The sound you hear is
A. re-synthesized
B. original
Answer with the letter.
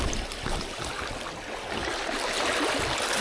B